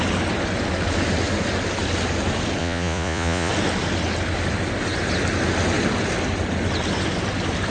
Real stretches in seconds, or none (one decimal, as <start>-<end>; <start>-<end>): 0.0-2.6; 3.5-7.7